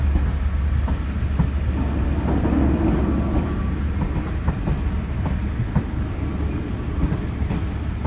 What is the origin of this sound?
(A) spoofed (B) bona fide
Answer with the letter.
B